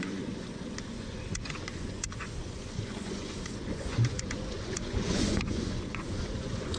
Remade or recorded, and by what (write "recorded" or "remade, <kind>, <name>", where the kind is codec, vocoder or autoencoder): remade, vocoder, Vocos